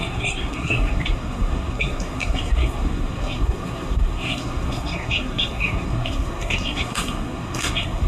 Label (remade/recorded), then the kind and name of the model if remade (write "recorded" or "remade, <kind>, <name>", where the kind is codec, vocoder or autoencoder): remade, codec, SNAC